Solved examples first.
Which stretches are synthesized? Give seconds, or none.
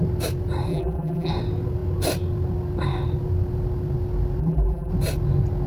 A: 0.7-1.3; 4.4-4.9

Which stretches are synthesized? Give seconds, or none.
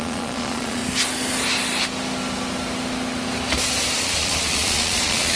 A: 0.0-0.8; 4.0-5.4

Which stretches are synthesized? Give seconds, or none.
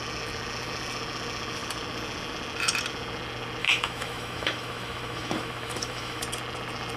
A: 3.6-6.2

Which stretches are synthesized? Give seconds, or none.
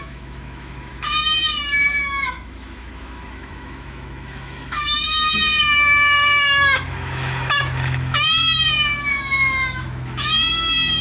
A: 0.0-11.0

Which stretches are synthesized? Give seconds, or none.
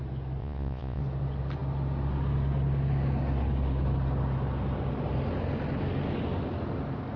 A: 0.4-1.0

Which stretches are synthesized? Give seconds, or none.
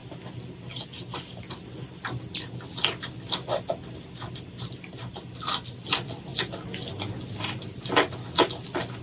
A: none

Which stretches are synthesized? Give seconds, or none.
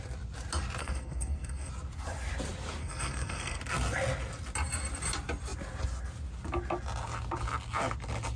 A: 0.8-1.7; 2.8-3.6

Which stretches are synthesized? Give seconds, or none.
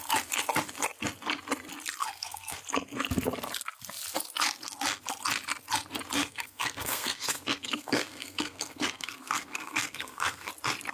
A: 2.0-2.6; 6.2-10.5